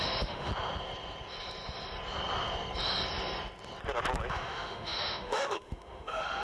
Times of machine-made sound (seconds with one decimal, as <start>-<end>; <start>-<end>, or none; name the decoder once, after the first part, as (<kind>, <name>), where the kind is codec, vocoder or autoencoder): 0.0-0.5 (autoencoder, DAC-VAE); 4.3-6.4